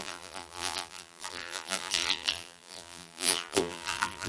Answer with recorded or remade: remade